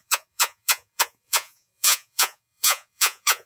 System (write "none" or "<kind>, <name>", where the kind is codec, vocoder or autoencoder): vocoder, Vocos